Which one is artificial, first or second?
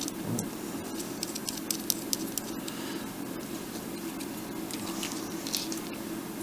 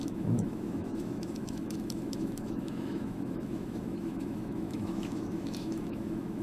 second